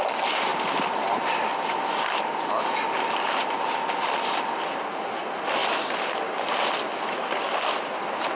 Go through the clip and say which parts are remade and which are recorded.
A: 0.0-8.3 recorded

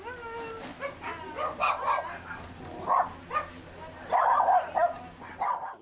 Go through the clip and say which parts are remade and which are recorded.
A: 0.0-5.8 recorded